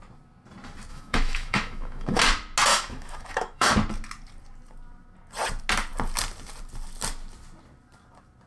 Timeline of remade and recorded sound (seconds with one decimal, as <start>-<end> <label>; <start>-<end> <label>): 0.0-0.9 recorded; 0.9-2.2 remade; 2.2-2.7 recorded; 2.7-3.7 remade; 3.7-8.5 recorded